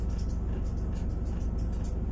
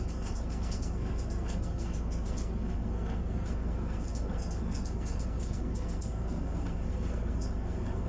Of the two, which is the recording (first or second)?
first